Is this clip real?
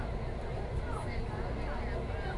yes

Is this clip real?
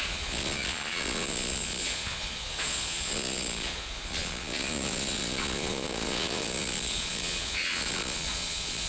no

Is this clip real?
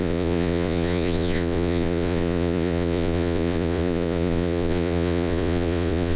no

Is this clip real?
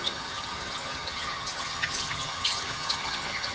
no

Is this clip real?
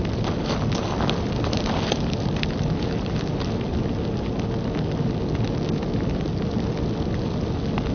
yes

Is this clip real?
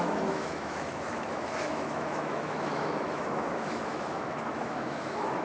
no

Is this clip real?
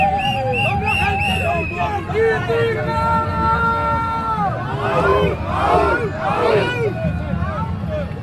yes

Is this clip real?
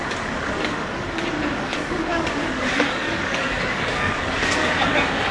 no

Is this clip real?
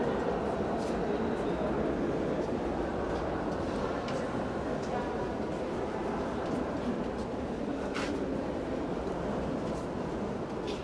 yes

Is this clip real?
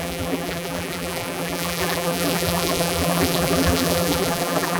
no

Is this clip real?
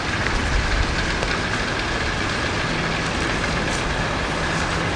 yes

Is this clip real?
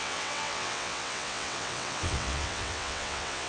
no